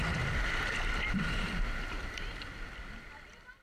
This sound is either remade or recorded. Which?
recorded